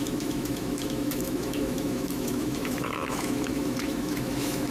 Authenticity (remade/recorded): remade